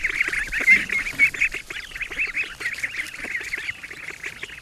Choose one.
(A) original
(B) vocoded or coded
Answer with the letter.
A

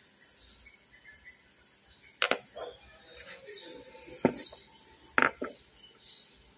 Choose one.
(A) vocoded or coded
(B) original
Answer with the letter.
B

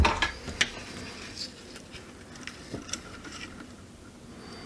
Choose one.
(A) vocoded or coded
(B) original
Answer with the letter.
B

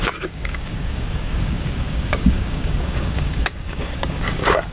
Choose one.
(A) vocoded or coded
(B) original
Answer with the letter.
A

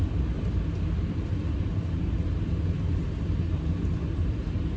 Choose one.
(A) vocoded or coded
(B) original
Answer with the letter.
B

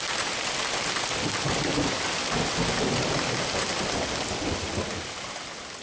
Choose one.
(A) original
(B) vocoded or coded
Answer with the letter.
A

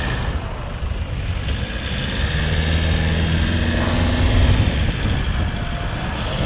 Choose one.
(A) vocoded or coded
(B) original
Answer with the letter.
B